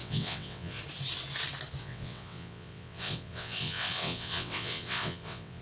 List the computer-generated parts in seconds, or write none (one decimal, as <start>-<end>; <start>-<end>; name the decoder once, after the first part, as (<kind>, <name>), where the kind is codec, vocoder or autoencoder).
0.0-0.8 (vocoder, WaveNeXt); 1.8-5.6